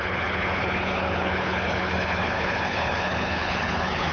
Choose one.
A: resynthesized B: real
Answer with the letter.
A